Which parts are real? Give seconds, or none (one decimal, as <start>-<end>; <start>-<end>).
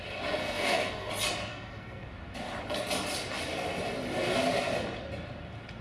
0.0-0.4; 1.1-1.5; 2.1-5.8